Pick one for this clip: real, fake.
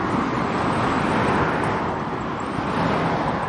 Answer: real